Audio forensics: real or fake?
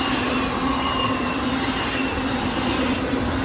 real